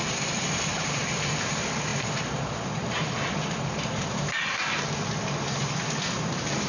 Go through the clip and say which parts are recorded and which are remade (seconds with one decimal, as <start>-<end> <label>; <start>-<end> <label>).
0.0-6.7 remade